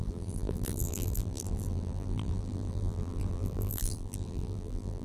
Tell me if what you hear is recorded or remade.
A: remade